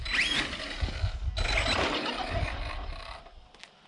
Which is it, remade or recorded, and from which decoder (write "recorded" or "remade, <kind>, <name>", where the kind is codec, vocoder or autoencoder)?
recorded